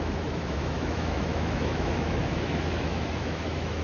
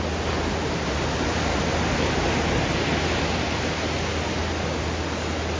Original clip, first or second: second